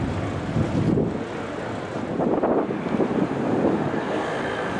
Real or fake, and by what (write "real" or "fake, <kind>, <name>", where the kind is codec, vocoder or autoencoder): real